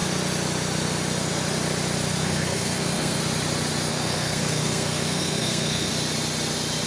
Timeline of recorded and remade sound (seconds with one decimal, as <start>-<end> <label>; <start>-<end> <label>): 0.0-2.2 recorded; 2.2-3.2 remade; 3.2-3.9 recorded; 3.9-5.9 remade; 5.9-6.9 recorded